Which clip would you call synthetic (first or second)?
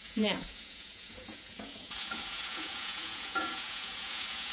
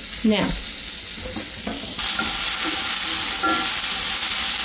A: first